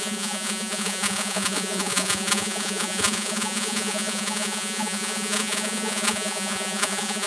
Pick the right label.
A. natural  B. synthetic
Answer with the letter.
B